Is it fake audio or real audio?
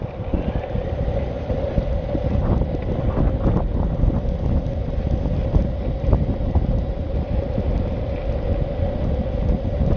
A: real